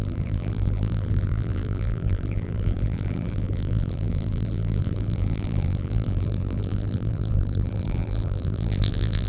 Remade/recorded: remade